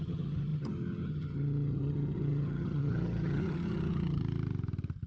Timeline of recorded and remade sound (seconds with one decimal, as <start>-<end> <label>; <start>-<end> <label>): 0.0-4.2 remade; 4.2-5.1 recorded